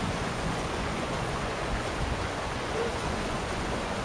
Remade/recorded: remade